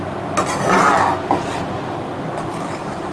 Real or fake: real